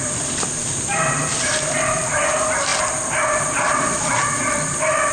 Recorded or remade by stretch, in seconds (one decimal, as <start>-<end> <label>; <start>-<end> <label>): 0.0-5.1 recorded